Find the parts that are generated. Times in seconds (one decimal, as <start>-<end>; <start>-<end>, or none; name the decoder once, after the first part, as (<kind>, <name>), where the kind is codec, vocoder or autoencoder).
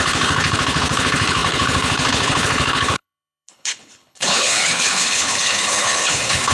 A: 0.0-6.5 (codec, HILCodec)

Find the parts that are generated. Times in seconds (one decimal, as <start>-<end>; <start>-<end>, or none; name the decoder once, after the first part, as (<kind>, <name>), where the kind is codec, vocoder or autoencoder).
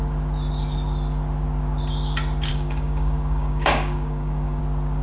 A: 2.5-4.6 (codec, DAC)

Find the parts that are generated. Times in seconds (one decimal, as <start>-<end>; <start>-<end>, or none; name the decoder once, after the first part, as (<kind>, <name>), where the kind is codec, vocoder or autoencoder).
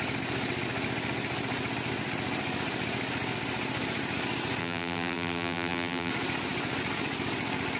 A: 4.6-6.1 (vocoder, BigVGAN v2)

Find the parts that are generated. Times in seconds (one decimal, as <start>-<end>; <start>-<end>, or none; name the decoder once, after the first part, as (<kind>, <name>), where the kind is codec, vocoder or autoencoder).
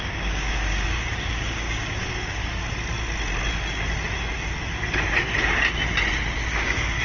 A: 0.0-2.6 (codec, DAC); 6.5-7.0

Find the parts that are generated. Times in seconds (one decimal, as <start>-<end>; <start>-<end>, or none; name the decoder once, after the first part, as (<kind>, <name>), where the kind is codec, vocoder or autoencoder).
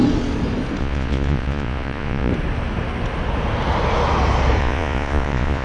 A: 0.8-2.3 (vocoder, Vocos); 4.6-5.6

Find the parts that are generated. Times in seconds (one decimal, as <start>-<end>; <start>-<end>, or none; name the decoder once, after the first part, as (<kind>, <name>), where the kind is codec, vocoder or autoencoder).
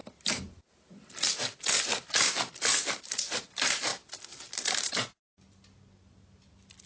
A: none